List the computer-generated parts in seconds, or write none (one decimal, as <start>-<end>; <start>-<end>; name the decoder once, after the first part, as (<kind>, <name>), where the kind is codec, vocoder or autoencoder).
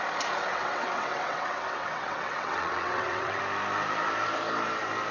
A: 0.5-3.4 (vocoder, WaveNeXt)